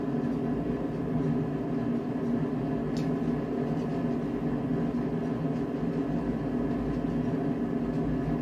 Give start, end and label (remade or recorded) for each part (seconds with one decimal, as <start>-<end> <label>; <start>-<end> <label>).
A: 0.0-8.4 recorded